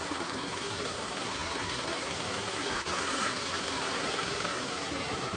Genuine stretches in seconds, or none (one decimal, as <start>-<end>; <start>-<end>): none